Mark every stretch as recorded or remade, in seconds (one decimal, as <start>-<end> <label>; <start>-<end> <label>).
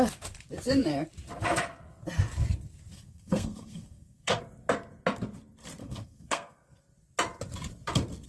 0.0-2.9 recorded; 2.9-4.4 remade; 4.4-5.8 recorded; 5.8-6.8 remade; 6.8-8.3 recorded